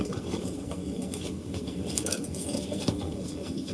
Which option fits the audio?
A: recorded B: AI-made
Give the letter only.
B